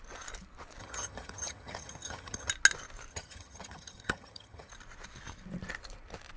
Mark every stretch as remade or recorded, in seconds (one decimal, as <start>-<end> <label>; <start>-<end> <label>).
0.0-0.8 recorded; 0.8-2.5 remade; 2.5-3.1 recorded; 3.1-4.7 remade; 4.7-6.4 recorded